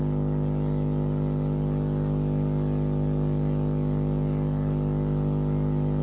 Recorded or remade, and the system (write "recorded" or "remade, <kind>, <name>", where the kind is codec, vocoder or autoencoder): recorded